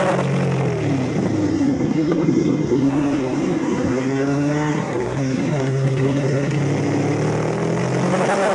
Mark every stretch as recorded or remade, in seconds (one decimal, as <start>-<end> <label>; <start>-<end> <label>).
0.0-1.5 recorded; 1.5-6.6 remade; 6.6-8.5 recorded